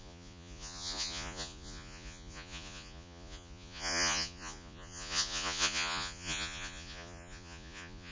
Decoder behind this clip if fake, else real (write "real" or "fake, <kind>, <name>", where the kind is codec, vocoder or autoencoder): fake, vocoder, Vocos